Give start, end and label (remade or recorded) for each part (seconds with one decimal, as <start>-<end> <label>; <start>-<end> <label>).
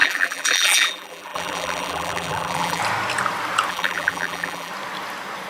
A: 0.0-2.8 remade; 2.8-3.7 recorded; 3.7-4.7 remade; 4.7-5.5 recorded